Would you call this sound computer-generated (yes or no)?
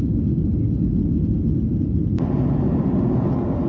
no